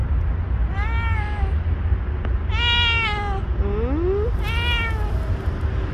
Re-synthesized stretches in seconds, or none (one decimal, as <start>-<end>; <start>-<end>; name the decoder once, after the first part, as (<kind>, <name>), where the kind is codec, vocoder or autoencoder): none